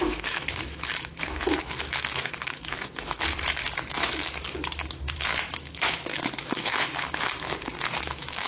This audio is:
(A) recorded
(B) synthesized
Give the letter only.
B